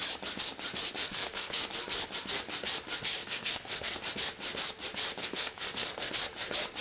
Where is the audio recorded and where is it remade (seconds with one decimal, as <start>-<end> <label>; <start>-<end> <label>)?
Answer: 0.0-1.0 recorded; 1.0-1.6 remade; 1.6-3.2 recorded; 3.2-4.0 remade; 4.0-5.2 recorded; 5.2-6.1 remade; 6.1-6.8 recorded